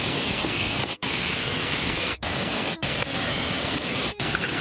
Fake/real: fake